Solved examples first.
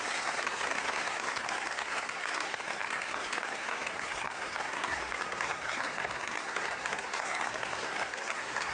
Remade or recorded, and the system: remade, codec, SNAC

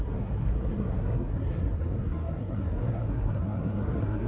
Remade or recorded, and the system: remade, codec, SNAC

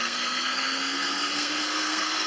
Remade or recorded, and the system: remade, codec, SNAC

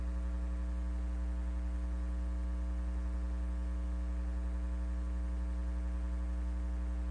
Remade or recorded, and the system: recorded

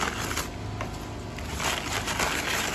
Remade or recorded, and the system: recorded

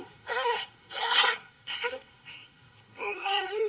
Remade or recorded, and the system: remade, codec, SNAC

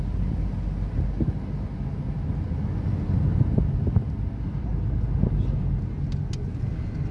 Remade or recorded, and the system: recorded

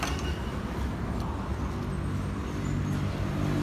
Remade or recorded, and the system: recorded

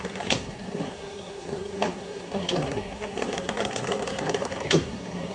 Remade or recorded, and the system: remade, codec, SNAC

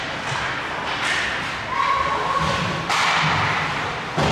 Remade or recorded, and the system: recorded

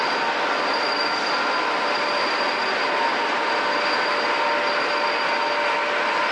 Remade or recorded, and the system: recorded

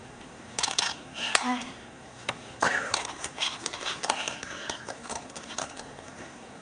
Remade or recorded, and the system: remade, codec, SNAC